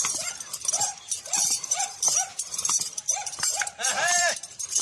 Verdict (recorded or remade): remade